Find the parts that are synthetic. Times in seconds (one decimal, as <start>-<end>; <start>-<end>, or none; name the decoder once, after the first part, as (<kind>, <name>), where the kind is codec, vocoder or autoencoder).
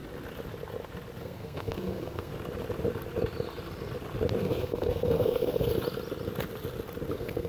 1.2-2.3 (codec, SNAC); 4.4-5.7; 7.1-7.5